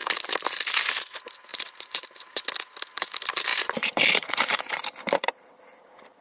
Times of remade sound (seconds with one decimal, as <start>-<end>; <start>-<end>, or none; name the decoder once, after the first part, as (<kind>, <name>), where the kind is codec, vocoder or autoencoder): 1.5-2.4 (vocoder, BigVGAN v2); 3.5-5.5